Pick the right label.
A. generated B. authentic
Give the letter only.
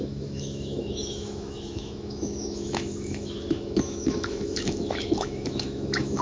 A